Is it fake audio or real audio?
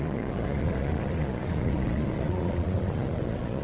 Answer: fake